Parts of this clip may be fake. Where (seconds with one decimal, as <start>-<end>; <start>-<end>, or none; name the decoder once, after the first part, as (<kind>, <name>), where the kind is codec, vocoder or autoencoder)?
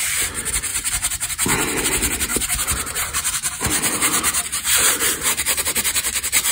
0.7-1.8 (vocoder, BigVGAN v2); 2.3-6.5